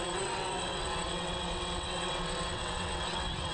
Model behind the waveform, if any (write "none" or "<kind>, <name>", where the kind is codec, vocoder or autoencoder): vocoder, WaveNeXt